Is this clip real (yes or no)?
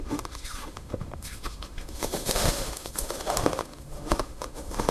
no